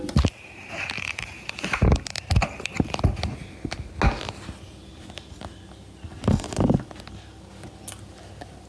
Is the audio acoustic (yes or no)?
yes